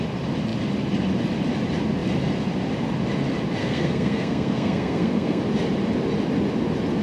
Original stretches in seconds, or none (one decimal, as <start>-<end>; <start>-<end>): 0.0-3.6; 5.4-7.0